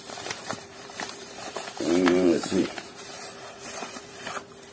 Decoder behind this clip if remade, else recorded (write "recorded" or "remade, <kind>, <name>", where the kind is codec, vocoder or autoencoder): remade, vocoder, BigVGAN v2